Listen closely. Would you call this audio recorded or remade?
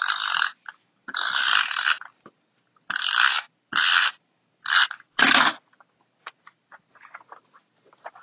recorded